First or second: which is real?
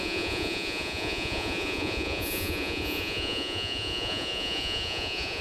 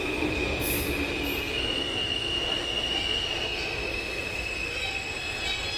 second